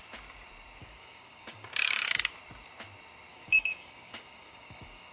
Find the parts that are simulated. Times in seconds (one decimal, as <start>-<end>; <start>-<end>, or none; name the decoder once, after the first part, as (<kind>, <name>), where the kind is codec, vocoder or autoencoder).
0.8-2.3 (codec, DAC); 3.3-5.1